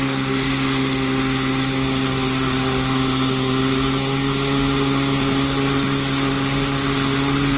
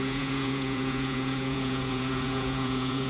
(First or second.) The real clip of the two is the first